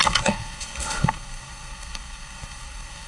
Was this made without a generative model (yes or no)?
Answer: no